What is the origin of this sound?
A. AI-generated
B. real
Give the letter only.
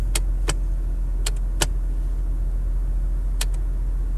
B